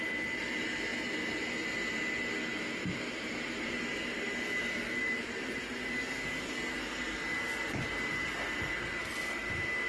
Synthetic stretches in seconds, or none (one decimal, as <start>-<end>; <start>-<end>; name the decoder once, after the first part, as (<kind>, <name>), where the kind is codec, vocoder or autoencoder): none